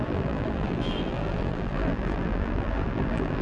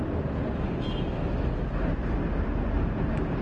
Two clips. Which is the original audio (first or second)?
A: second